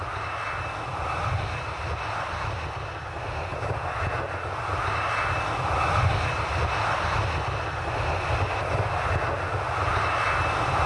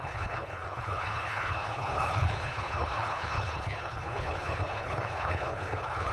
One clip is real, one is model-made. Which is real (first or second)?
first